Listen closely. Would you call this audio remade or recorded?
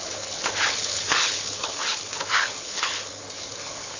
remade